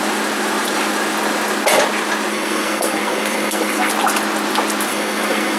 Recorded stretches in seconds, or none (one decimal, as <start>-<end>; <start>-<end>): 0.0-2.3; 3.9-4.9